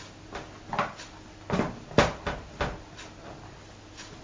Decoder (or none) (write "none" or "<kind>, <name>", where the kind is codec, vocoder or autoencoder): none